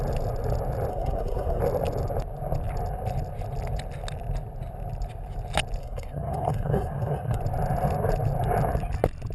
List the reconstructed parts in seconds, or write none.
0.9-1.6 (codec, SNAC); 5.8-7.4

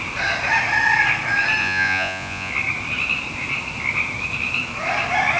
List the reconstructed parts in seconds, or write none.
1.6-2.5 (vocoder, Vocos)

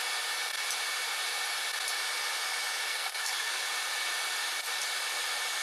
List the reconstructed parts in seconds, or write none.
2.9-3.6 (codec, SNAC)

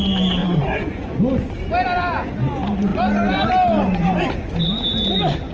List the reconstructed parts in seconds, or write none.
0.4-1.1 (vocoder, Vocos)

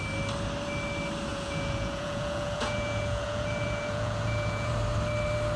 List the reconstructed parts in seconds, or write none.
1.3-4.7 (vocoder, Vocos)